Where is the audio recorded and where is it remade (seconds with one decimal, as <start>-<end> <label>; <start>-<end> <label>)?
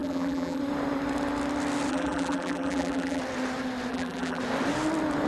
0.0-0.6 remade; 0.6-1.9 recorded; 1.9-3.2 remade; 3.2-3.9 recorded; 3.9-4.4 remade; 4.4-5.3 recorded